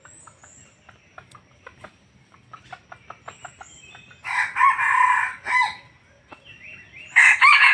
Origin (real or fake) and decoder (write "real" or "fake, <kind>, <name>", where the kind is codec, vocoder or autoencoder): real